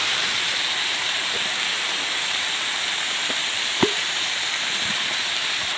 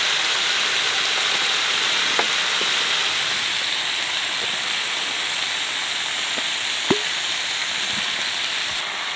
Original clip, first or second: second